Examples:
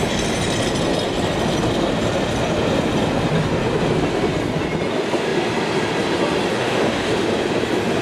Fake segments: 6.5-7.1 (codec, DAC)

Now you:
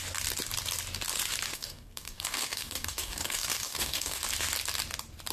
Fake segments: 1.5-4.2 (codec, DAC)

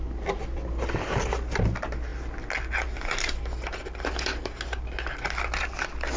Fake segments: none

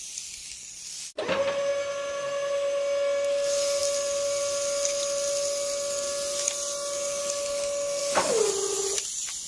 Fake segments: none

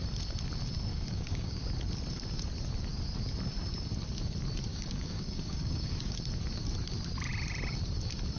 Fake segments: 0.9-1.6 (codec, DAC); 4.7-6.2

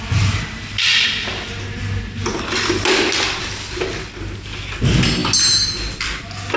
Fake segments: none

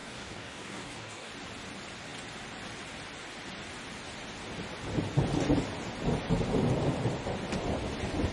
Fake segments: 0.0-1.3 (codec, DAC)